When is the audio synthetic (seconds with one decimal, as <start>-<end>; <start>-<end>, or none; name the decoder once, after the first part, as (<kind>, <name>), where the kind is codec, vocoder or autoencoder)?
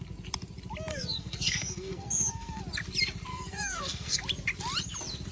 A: 0.9-2.6 (codec, SNAC); 3.3-4.2